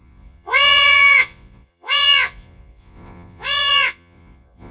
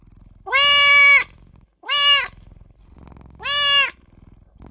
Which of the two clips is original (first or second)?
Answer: second